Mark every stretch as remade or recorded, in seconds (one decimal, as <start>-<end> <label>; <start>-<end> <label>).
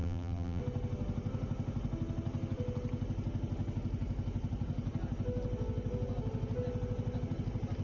0.0-0.6 remade; 0.6-7.8 recorded